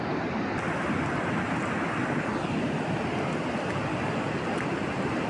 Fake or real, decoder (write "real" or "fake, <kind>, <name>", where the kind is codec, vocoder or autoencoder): real